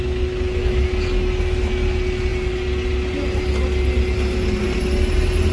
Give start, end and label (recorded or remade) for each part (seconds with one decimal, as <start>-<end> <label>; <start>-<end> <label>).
0.0-5.5 recorded